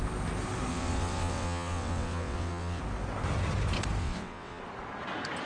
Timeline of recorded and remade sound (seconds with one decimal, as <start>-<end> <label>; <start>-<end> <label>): 0.0-0.7 recorded; 0.7-2.8 remade; 2.8-4.0 recorded; 4.0-4.6 remade; 4.6-5.5 recorded